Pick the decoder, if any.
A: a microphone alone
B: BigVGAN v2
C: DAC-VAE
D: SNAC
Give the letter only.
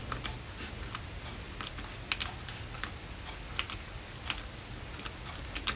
A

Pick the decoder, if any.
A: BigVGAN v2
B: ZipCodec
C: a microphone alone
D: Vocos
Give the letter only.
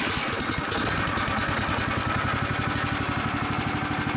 C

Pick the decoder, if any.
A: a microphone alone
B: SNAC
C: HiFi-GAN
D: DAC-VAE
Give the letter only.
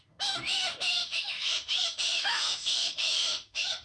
D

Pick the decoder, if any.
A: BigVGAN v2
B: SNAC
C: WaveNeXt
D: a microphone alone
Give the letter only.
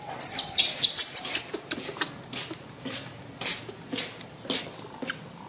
D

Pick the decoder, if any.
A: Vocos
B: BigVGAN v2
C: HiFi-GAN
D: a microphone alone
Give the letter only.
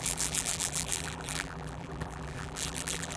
B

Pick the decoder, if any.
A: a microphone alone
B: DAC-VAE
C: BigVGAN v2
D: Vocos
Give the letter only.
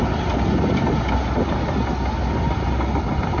A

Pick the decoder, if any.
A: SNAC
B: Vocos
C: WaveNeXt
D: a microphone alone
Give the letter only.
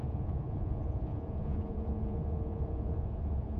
B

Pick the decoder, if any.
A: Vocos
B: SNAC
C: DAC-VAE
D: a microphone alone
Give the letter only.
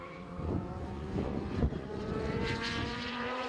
A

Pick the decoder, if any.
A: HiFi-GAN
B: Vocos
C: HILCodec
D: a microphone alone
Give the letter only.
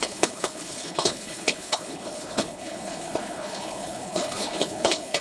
C